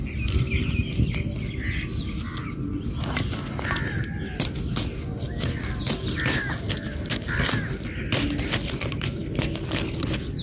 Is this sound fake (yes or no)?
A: no